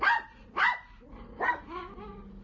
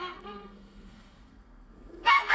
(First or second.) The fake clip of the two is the second